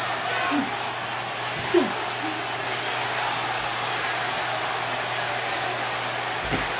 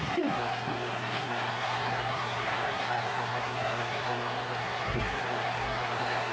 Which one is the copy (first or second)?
second